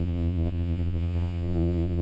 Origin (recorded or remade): remade